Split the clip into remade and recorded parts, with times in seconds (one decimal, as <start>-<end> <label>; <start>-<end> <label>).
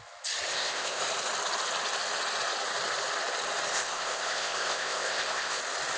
0.0-0.5 recorded; 0.5-1.0 remade; 1.0-3.7 recorded; 3.7-5.6 remade; 5.6-6.0 recorded